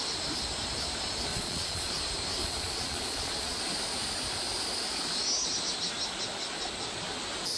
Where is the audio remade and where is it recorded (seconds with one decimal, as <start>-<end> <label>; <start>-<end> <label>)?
0.0-1.3 recorded; 1.3-1.9 remade; 1.9-2.4 recorded; 2.4-3.6 remade; 3.6-7.6 recorded